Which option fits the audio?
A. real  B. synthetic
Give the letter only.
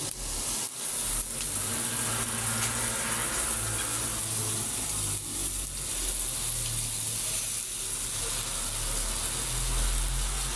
A